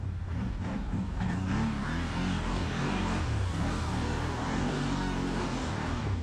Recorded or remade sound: remade